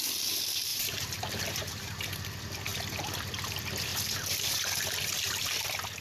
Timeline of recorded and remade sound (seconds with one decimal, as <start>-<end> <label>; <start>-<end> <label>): 0.0-0.7 recorded; 0.7-2.1 remade; 2.1-6.0 recorded